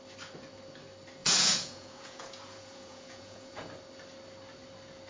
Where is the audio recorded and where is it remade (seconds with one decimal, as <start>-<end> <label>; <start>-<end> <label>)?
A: 0.0-1.2 recorded; 1.2-3.7 remade; 3.7-5.1 recorded